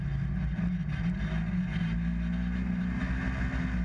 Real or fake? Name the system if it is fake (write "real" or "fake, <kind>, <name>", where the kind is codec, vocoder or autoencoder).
real